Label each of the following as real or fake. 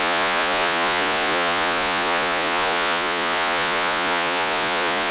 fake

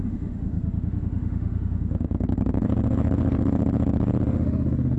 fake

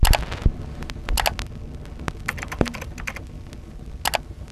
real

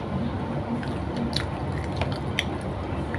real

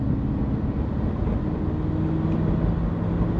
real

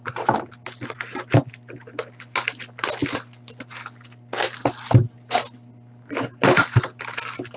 real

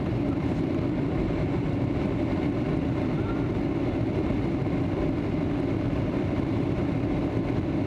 fake